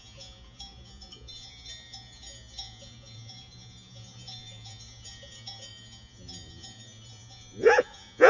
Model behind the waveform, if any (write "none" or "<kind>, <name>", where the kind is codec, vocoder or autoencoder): vocoder, Vocos